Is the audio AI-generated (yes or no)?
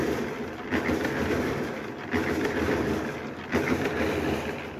no